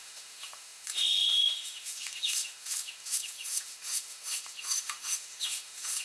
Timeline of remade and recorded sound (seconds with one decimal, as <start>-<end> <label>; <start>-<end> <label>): 0.0-6.0 remade